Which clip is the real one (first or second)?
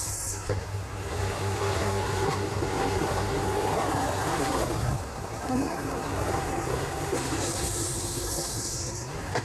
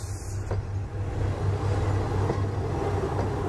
second